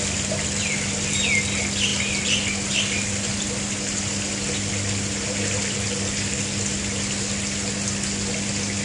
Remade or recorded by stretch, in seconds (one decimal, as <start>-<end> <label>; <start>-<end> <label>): 0.0-8.8 recorded